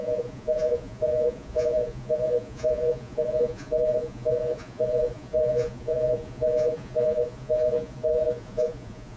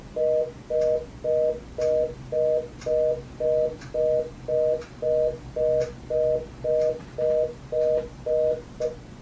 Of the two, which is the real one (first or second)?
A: second